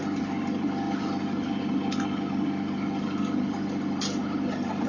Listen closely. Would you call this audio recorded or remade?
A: recorded